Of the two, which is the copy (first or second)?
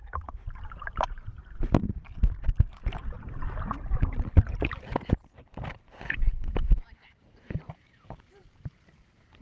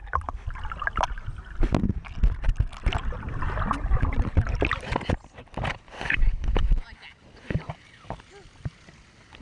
first